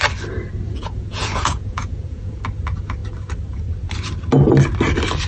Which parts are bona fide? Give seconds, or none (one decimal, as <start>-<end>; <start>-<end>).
0.0-0.7; 2.4-5.3